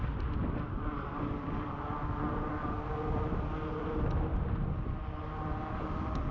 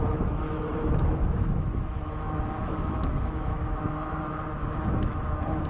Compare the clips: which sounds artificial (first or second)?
second